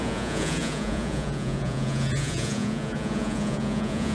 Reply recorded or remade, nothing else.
remade